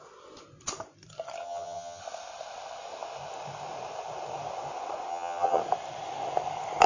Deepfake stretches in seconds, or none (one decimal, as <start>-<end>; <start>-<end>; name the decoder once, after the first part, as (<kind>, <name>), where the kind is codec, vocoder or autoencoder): 1.4-2.0 (vocoder, HiFi-GAN); 5.1-5.6